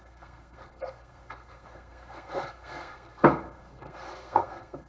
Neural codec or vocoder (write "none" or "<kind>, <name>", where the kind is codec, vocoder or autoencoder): codec, SNAC